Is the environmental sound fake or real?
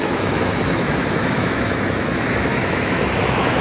fake